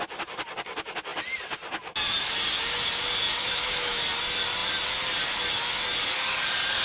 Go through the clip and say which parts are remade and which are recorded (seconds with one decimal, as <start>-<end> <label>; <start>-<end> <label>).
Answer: 0.0-3.3 recorded; 3.3-4.0 remade; 4.0-6.8 recorded